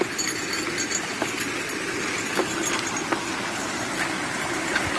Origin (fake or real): real